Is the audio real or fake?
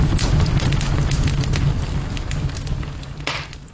real